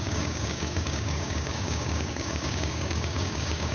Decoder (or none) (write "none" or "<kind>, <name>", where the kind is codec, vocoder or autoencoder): codec, DAC